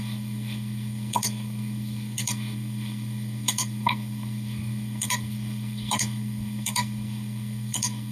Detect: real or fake fake